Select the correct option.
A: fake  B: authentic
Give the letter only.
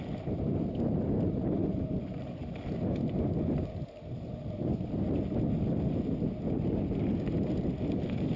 B